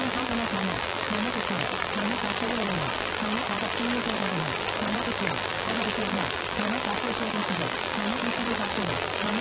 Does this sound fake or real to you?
fake